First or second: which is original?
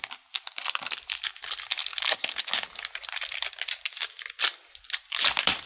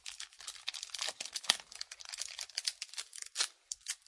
first